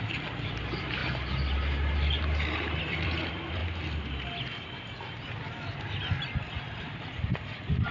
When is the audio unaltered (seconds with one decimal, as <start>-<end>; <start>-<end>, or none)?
1.0-2.8; 3.6-6.6